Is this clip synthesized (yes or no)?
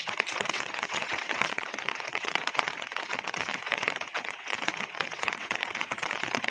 yes